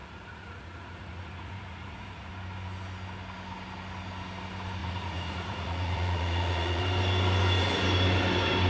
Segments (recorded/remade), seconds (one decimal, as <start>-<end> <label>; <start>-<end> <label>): 0.0-2.3 remade; 2.3-4.8 recorded; 4.8-6.8 remade; 6.8-8.7 recorded